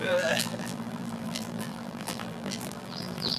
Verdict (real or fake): fake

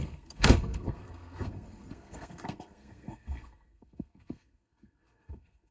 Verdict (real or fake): fake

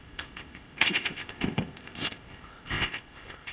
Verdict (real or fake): fake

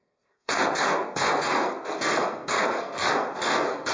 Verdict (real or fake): fake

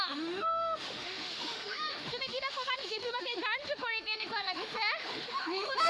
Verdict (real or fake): fake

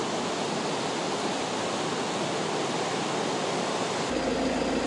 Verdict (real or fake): real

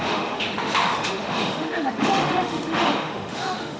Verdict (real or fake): fake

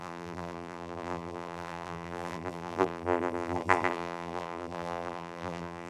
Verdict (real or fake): fake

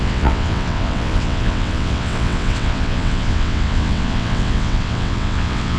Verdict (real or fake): fake